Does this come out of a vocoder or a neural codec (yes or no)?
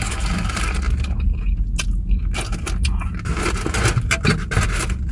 no